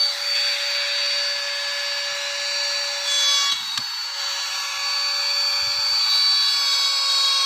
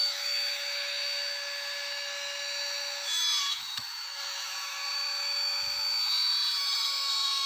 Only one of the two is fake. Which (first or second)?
second